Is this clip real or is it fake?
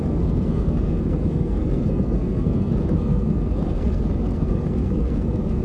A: fake